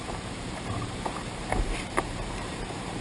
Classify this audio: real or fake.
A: fake